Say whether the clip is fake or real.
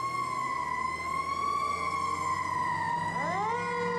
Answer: real